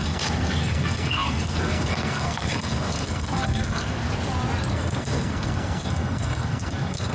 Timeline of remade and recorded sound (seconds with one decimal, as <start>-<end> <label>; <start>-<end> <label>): 0.0-4.0 remade; 4.0-4.7 recorded; 4.7-7.1 remade